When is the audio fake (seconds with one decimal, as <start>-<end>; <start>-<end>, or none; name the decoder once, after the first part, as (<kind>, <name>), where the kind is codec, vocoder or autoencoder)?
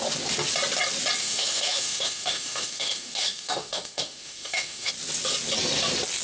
1.2-4.9 (autoencoder, DAC-VAE)